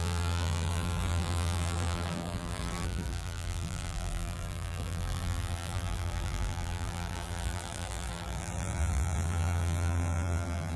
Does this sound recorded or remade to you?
remade